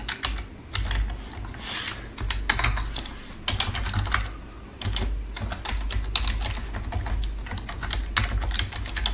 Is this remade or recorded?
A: recorded